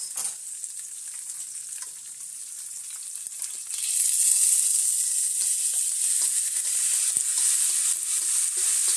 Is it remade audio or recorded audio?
recorded